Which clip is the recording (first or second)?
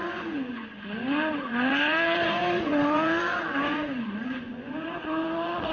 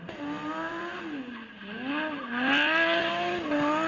second